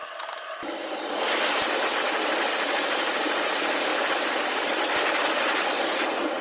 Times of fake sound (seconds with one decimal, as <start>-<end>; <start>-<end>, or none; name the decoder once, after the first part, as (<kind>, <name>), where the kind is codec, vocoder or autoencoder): 2.5-3.9 (vocoder, Vocos); 5.9-6.4